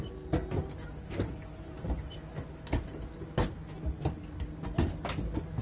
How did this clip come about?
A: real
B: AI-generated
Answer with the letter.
A